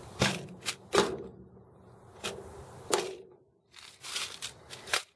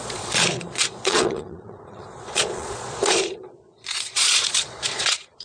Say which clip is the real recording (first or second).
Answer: first